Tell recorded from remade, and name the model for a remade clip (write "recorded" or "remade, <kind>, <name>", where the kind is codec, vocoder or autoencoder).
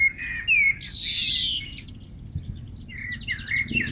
recorded